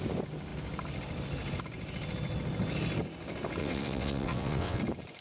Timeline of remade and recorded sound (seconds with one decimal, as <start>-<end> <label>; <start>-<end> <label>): 0.0-3.6 recorded; 3.6-4.8 remade; 4.8-5.2 recorded